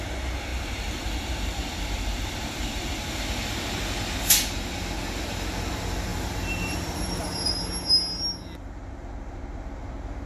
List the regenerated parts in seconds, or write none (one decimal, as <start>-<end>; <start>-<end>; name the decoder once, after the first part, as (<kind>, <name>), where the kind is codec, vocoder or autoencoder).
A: 0.5-3.2 (vocoder, BigVGAN v2); 6.1-7.5